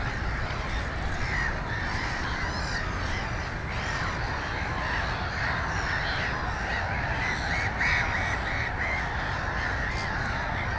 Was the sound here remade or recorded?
recorded